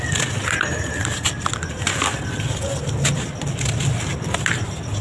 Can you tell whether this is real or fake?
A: real